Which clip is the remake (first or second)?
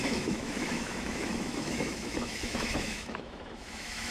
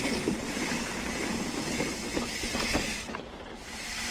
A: first